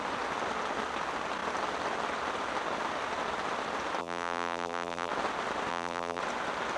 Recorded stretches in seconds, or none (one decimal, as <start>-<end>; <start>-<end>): 0.0-4.0; 5.1-5.7; 6.2-6.8